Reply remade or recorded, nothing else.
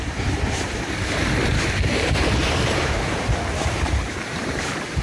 remade